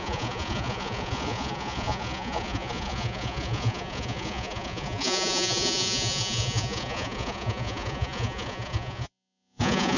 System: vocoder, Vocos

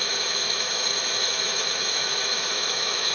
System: autoencoder, DAC-VAE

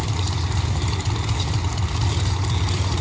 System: none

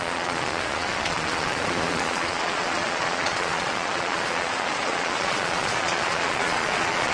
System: vocoder, Vocos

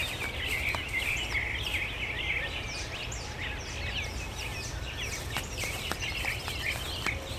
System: none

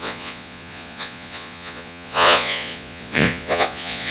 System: vocoder, Vocos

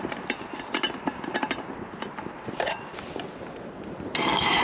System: none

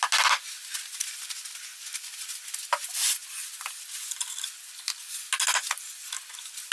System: none